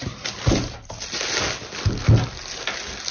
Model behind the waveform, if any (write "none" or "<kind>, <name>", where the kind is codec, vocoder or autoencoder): none